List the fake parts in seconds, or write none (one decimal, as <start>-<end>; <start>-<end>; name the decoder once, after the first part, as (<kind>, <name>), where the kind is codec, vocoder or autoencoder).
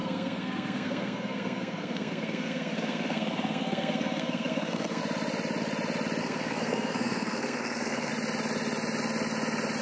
0.0-5.0 (codec, SNAC); 6.2-8.1